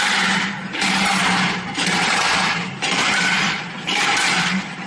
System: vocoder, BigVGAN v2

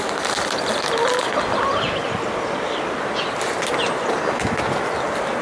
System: none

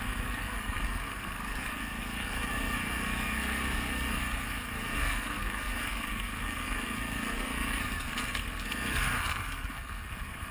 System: codec, SNAC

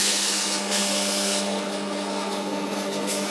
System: codec, SNAC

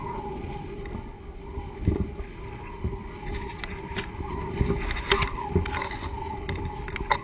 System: none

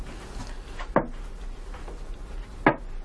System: none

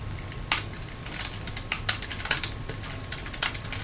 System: none